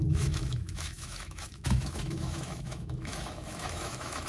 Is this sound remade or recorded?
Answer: remade